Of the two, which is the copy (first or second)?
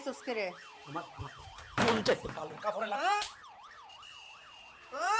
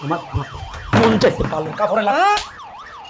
first